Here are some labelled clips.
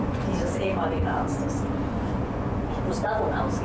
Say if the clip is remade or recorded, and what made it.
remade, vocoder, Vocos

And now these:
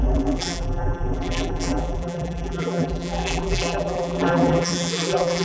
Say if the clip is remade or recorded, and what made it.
remade, vocoder, BigVGAN v2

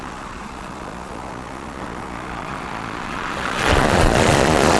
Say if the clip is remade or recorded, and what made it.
remade, vocoder, Vocos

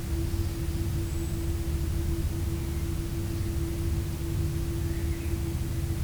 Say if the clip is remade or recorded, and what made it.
recorded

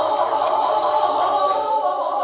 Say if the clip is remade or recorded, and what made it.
recorded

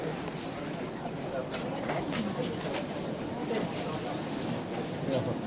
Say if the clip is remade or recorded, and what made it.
recorded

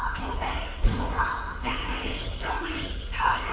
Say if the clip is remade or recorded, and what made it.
remade, codec, SNAC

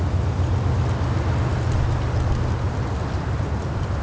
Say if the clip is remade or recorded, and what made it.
recorded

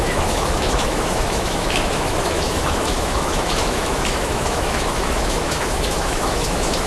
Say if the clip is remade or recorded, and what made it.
remade, autoencoder, DAC-VAE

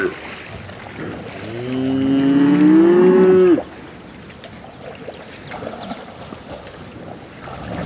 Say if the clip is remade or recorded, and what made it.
recorded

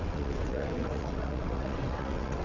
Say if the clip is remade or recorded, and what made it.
remade, vocoder, WaveNeXt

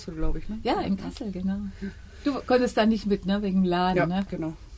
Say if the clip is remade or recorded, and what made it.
recorded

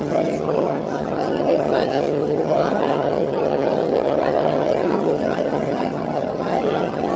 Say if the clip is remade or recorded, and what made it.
remade, vocoder, HiFi-GAN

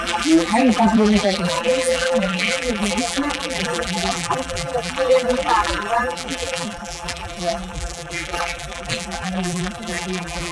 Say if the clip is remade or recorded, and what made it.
remade, vocoder, BigVGAN v2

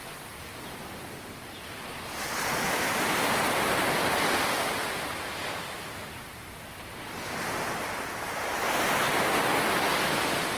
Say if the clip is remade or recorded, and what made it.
recorded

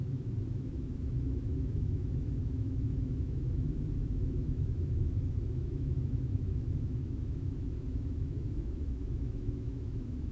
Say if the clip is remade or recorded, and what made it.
remade, autoencoder, DAC-VAE